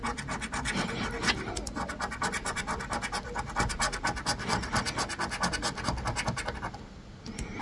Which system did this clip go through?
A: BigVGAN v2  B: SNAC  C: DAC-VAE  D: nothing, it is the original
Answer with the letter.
D